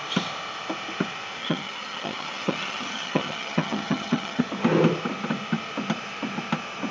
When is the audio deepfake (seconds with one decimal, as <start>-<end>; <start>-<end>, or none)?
1.4-4.4